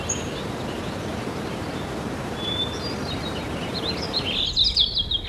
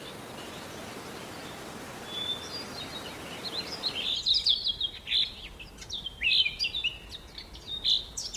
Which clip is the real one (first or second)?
second